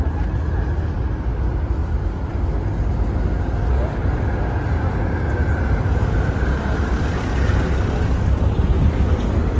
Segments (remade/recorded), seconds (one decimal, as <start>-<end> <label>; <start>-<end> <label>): 0.0-1.8 recorded; 1.8-2.3 remade; 2.3-4.0 recorded; 4.0-4.5 remade; 4.5-9.6 recorded